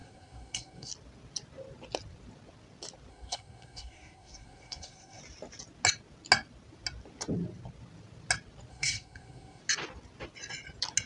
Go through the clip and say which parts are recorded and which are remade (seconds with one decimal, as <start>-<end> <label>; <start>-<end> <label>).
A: 0.0-0.9 remade; 0.9-3.1 recorded; 3.1-5.2 remade; 5.2-8.7 recorded; 8.7-9.6 remade; 9.6-11.1 recorded